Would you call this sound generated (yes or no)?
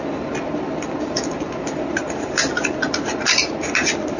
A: no